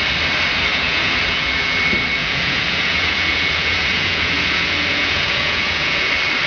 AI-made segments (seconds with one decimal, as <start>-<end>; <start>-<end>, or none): 0.7-1.8; 2.2-6.1